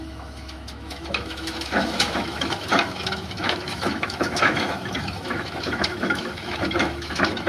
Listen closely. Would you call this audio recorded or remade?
remade